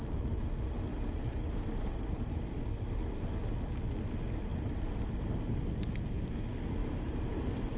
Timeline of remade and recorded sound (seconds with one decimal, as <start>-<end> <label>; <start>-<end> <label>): 0.0-0.9 recorded; 0.9-3.0 remade; 3.0-4.5 recorded; 4.5-5.6 remade; 5.6-6.8 recorded; 6.8-7.8 remade

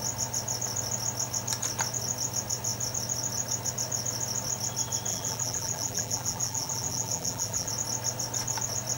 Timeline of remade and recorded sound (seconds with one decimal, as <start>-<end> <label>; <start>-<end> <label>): 0.0-5.1 recorded; 5.1-7.7 remade; 7.7-9.0 recorded

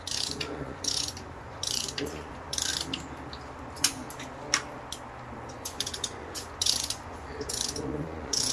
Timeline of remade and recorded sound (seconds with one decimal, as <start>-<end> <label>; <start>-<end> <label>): 0.0-2.7 remade; 2.7-3.6 recorded; 3.6-4.0 remade; 4.0-5.5 recorded; 5.5-8.5 remade

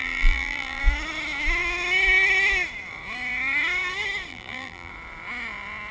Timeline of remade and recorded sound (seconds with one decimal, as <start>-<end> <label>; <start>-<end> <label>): 0.0-0.8 remade; 0.8-4.3 recorded; 4.3-4.9 remade; 4.9-5.9 recorded